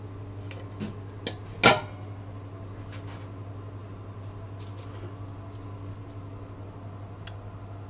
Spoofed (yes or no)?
no